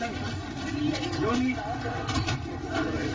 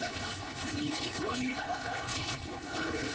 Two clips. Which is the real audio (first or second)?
first